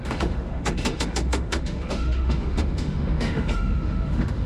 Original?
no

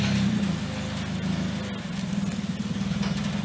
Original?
yes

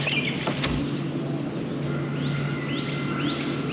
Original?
yes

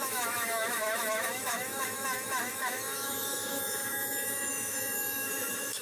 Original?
no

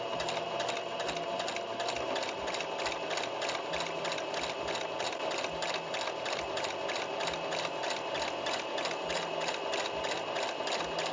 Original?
yes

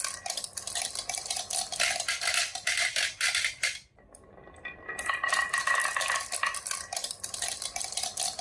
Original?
yes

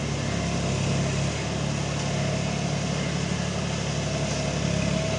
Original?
yes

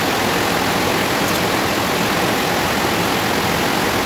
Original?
yes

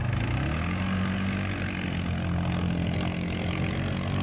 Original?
yes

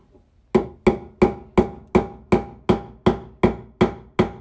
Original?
yes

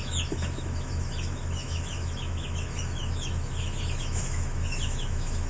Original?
no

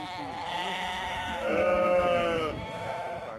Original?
no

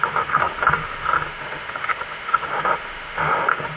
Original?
no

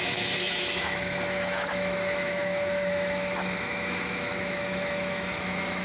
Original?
no